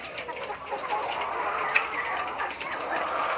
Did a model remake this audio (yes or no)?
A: no